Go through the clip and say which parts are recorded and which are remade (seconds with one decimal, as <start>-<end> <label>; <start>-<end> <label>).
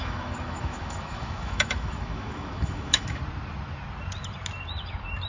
0.0-3.2 remade; 3.2-5.3 recorded